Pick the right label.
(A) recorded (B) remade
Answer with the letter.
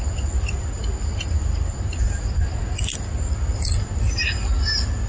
A